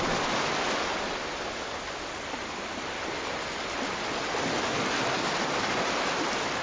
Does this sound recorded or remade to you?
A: recorded